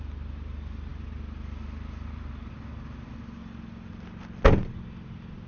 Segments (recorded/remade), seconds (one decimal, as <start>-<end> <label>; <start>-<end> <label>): 0.0-5.5 recorded